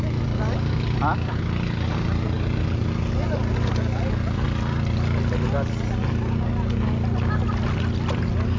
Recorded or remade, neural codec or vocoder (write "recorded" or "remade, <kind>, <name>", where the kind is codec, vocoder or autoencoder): recorded